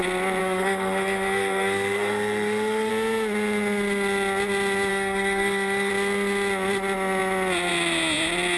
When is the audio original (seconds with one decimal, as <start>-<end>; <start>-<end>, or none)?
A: 0.0-0.4; 2.9-4.9; 5.9-8.6